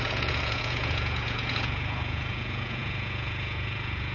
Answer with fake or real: fake